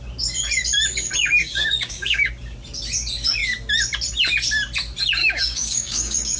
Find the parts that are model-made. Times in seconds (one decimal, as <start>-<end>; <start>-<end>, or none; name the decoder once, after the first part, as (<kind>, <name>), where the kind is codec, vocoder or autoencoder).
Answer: 1.4-2.3 (codec, DAC); 5.2-6.4